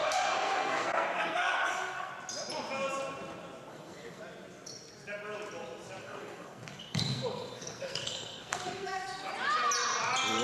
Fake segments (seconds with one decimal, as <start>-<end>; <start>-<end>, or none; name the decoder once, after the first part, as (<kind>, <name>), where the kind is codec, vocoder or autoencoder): 0.0-2.1 (codec, SNAC); 3.7-4.2; 6.0-9.3